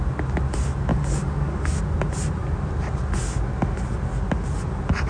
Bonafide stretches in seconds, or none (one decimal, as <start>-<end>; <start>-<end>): 0.0-0.9; 1.8-5.1